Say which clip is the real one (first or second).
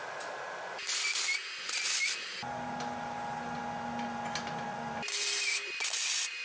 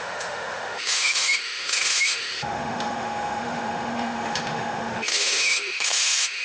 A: first